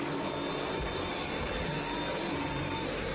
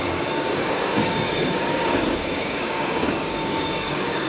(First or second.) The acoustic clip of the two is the first